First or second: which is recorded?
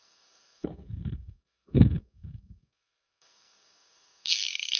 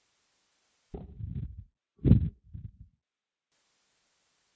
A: second